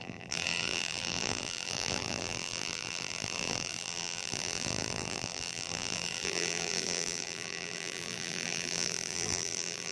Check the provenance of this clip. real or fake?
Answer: fake